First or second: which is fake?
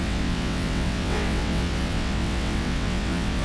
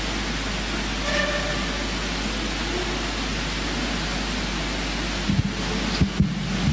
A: first